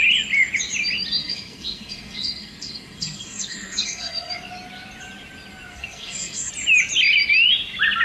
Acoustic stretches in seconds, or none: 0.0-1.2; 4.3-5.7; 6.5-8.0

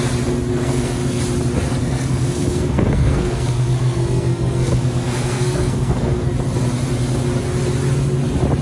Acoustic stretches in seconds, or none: 0.0-0.5; 1.2-1.8; 6.3-8.6

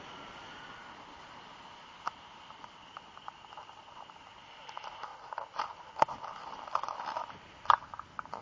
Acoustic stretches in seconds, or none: 0.0-8.4

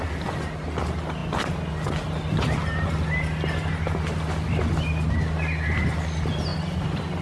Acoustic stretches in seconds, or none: 0.0-7.2

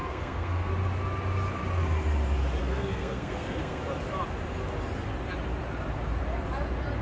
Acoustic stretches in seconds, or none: 0.7-2.6; 3.8-7.0

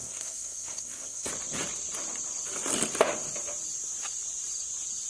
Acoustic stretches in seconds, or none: 1.3-5.1

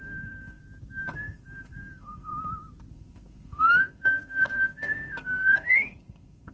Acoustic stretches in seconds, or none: 0.6-1.1; 2.3-2.9